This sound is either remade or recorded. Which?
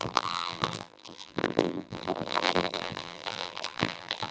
remade